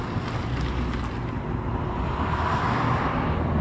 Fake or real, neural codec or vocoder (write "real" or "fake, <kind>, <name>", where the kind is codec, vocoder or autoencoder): real